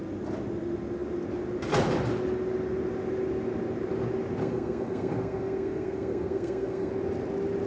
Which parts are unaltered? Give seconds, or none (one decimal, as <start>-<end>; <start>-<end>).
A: 0.0-4.4; 6.9-7.7